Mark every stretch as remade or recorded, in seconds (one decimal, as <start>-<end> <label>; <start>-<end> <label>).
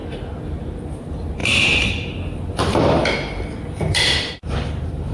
0.0-0.6 recorded; 0.6-3.0 remade; 3.0-3.8 recorded; 3.8-5.1 remade